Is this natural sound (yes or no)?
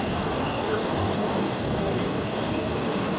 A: no